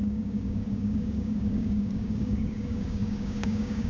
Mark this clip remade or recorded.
remade